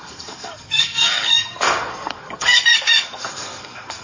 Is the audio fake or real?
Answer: fake